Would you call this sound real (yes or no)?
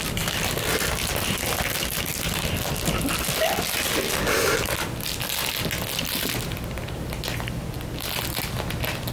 yes